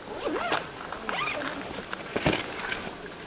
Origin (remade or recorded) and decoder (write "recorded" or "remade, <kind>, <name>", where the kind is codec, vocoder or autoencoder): recorded